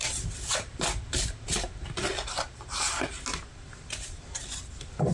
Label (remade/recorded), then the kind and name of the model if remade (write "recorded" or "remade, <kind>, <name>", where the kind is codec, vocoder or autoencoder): recorded